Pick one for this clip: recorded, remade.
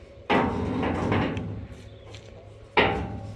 recorded